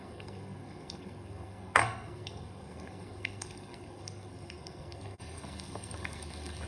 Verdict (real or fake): fake